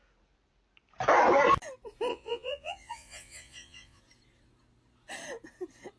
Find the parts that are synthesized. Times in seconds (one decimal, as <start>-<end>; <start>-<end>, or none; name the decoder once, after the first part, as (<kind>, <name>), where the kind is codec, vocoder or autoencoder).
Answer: 2.1-4.0 (vocoder, Vocos)